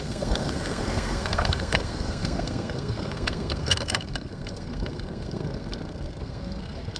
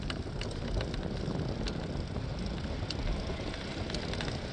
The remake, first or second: first